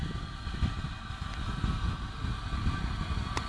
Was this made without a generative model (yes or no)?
yes